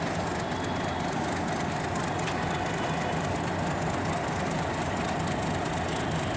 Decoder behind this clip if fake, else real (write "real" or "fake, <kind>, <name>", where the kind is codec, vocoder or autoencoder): real